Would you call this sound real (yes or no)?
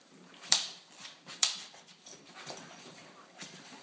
no